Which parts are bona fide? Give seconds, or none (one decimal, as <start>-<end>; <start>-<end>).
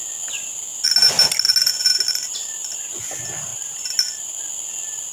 0.0-0.7; 1.3-1.9; 2.9-3.5; 4.4-5.1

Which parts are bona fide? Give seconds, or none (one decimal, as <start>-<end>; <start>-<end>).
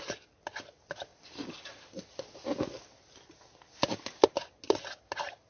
0.0-5.5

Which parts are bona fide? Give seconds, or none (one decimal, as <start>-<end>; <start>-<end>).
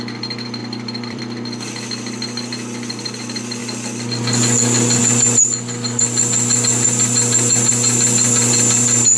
0.0-0.6; 1.2-9.2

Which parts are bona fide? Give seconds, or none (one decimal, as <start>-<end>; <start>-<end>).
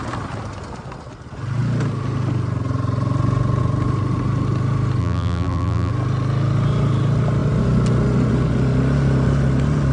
0.0-5.0; 5.9-9.9